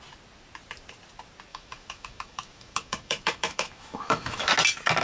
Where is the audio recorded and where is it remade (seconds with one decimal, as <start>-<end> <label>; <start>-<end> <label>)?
0.0-1.5 recorded; 1.5-4.5 remade; 4.5-5.0 recorded